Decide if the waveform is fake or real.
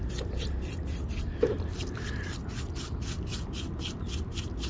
real